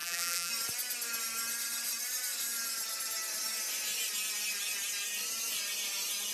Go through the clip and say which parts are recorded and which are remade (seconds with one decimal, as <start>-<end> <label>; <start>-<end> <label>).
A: 0.0-0.5 remade; 0.5-6.3 recorded